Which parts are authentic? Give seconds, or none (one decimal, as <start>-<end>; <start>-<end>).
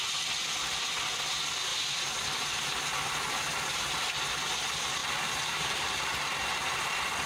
0.0-5.0; 6.8-7.3